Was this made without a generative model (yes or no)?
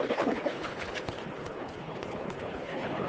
no